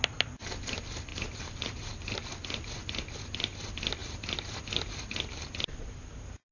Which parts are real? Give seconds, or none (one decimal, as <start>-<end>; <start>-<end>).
0.0-1.1; 2.3-6.5